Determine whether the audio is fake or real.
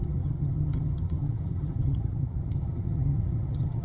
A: fake